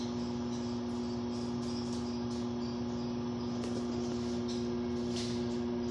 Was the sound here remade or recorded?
recorded